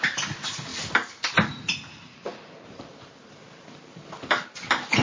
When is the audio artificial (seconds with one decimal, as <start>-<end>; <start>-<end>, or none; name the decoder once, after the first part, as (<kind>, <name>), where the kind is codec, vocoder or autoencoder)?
2.3-3.3 (vocoder, BigVGAN v2)